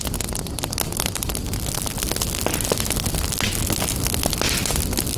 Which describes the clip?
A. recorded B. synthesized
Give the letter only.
A